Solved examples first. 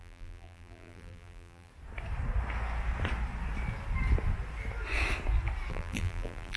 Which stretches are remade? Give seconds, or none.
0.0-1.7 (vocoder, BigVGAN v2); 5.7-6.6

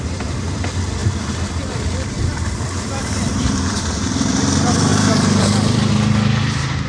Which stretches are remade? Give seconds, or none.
1.0-4.0 (vocoder, BigVGAN v2); 4.9-5.9

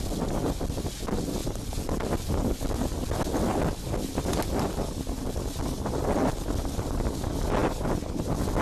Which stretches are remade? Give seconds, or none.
1.4-2.7 (vocoder, BigVGAN v2); 3.5-6.0; 7.6-8.2

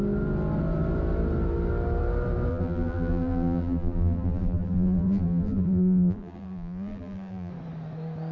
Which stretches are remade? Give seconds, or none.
2.5-7.5 (vocoder, BigVGAN v2)

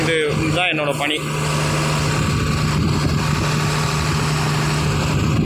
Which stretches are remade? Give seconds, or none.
none

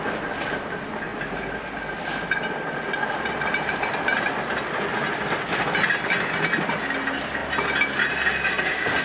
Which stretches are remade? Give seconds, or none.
none

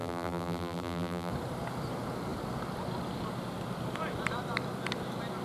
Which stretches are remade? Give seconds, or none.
0.0-1.3 (vocoder, BigVGAN v2)